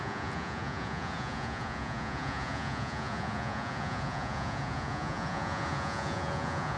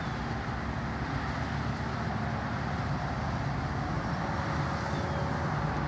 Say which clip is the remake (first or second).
first